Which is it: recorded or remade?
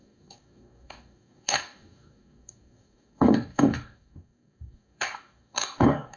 remade